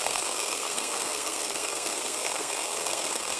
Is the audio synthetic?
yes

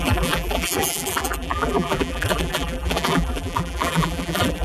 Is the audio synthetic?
yes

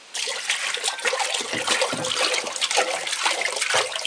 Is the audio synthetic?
no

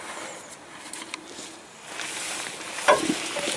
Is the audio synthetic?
no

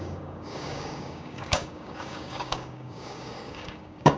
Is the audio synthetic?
yes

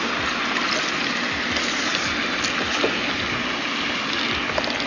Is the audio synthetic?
no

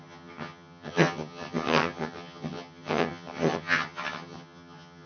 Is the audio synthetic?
yes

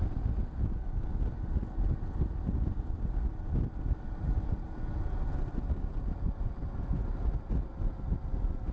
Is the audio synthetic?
no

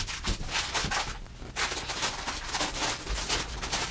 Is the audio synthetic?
no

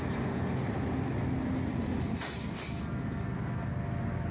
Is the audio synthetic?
no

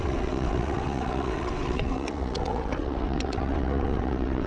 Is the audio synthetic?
yes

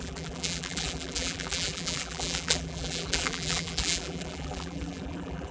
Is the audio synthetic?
yes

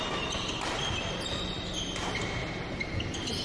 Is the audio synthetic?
no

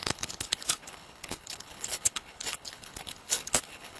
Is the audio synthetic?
yes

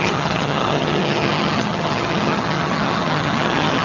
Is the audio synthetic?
yes